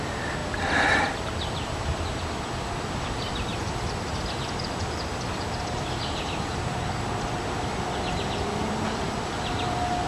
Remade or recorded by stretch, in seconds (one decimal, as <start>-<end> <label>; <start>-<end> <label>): 0.0-10.1 recorded